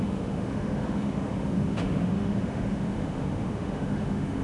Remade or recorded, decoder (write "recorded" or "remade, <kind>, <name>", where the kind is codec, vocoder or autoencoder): remade, autoencoder, DAC-VAE